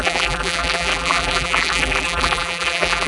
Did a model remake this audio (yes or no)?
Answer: yes